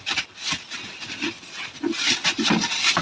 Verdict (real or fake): real